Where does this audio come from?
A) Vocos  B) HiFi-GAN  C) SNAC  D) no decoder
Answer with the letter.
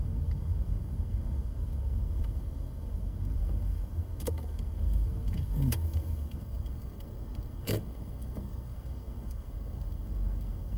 C